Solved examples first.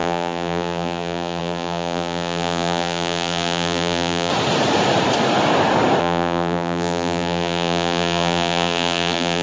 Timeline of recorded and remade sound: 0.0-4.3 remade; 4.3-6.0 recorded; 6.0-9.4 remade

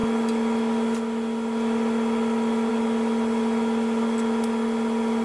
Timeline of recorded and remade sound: 0.0-5.2 recorded